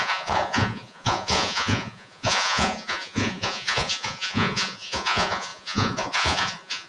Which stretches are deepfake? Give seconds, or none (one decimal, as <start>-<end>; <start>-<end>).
0.0-6.9

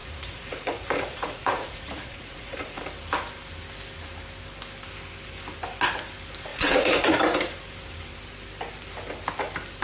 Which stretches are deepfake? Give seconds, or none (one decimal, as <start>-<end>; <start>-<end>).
0.0-2.8; 6.5-7.2

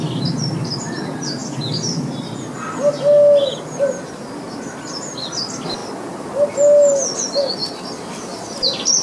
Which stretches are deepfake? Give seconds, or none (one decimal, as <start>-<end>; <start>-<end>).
none

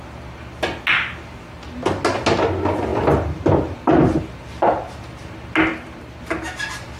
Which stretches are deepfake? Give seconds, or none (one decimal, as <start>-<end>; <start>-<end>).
2.9-4.2; 5.7-6.2

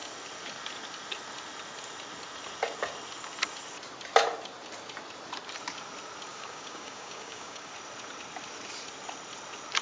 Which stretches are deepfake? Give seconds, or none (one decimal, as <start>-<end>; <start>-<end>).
6.3-7.7